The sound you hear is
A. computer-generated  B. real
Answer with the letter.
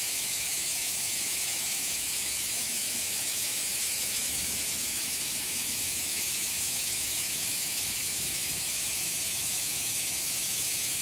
A